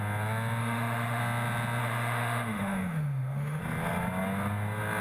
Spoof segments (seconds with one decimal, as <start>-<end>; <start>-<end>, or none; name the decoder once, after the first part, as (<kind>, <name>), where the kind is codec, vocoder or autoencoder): 0.6-1.2 (autoencoder, DAC-VAE); 1.8-3.6